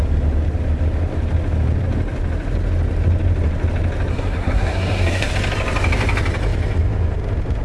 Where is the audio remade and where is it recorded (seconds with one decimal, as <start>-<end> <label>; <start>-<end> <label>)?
0.0-4.1 recorded; 4.1-5.3 remade; 5.3-7.6 recorded